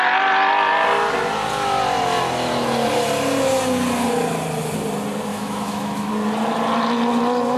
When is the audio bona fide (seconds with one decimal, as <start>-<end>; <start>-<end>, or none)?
0.0-5.3; 6.1-7.6